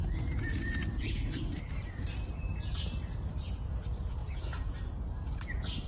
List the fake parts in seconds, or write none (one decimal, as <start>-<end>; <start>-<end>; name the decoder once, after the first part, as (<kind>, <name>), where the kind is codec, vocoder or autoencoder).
4.2-4.8 (vocoder, Vocos)